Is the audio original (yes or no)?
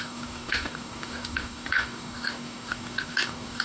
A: no